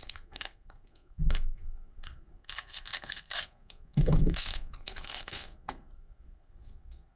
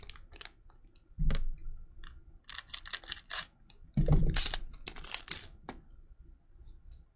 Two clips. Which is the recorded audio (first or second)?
second